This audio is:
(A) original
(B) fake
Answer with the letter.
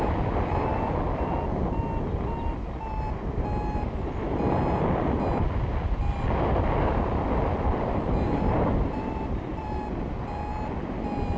A